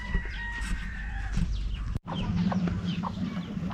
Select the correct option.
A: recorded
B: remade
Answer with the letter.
B